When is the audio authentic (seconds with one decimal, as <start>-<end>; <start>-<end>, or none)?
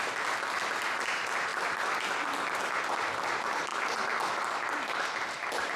0.0-5.8